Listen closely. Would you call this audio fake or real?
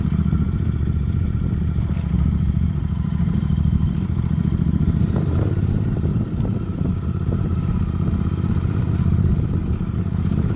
fake